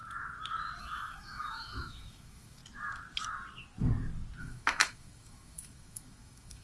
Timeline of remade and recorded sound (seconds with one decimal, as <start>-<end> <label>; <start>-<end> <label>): 0.0-0.8 recorded; 0.8-2.6 remade; 2.6-4.4 recorded; 4.4-6.6 remade